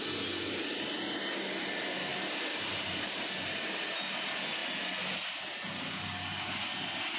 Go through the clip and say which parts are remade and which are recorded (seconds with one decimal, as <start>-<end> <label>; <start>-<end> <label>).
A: 0.0-2.1 recorded; 2.1-3.2 remade; 3.2-7.2 recorded